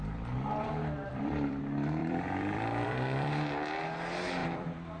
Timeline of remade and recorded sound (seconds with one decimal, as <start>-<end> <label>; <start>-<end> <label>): 0.0-1.1 recorded; 1.1-1.6 remade; 1.6-2.0 recorded; 2.0-3.3 remade; 3.3-4.4 recorded; 4.4-5.0 remade